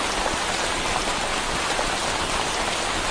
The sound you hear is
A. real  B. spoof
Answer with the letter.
A